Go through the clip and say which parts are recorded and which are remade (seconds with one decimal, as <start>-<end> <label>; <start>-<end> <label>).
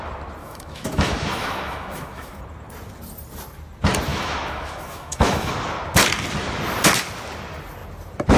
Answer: 0.0-0.4 recorded; 0.4-2.4 remade; 2.4-4.1 recorded; 4.1-5.5 remade; 5.5-8.4 recorded